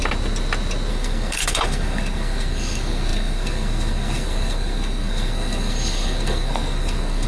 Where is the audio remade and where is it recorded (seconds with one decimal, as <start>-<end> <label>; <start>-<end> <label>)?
0.0-0.9 recorded; 0.9-7.3 remade